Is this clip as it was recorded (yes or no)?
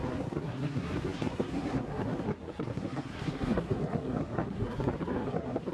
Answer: no